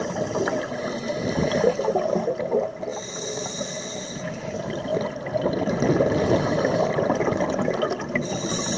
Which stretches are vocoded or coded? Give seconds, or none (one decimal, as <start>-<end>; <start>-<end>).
none